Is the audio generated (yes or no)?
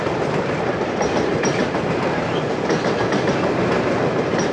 no